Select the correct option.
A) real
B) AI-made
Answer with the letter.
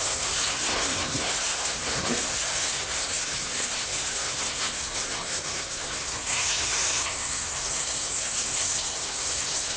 B